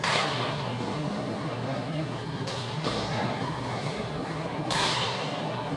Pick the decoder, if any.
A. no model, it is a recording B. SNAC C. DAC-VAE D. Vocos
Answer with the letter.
B